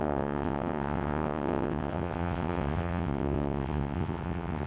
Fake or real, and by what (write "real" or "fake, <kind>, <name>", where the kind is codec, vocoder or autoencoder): fake, vocoder, WaveNeXt